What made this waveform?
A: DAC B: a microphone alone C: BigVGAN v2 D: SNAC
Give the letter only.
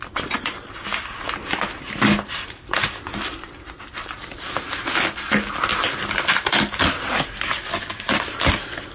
B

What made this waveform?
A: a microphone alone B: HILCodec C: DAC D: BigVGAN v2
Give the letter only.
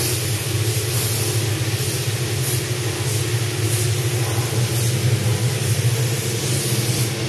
A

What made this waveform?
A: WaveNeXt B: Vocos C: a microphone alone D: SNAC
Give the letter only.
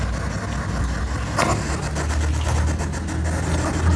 C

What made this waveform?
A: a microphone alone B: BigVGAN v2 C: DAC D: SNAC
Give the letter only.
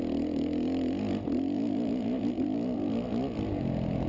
A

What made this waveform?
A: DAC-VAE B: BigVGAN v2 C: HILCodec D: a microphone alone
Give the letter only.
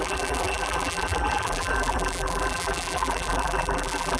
B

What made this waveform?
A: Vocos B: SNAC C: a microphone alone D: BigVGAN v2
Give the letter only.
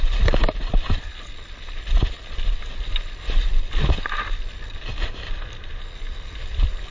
C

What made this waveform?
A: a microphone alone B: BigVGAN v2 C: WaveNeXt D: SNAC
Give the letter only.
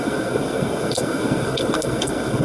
D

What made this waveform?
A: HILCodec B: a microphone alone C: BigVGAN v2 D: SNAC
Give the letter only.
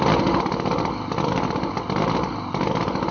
B